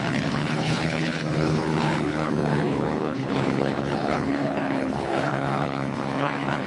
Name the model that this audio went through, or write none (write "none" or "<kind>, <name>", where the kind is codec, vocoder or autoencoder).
codec, HILCodec